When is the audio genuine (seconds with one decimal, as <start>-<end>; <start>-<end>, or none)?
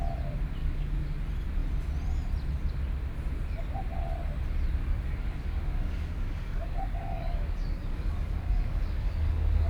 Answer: 0.0-0.6; 1.2-4.8